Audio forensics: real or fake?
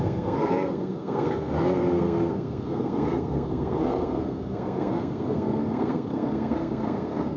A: fake